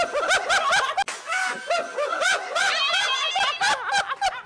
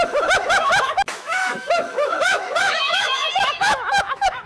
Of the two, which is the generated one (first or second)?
second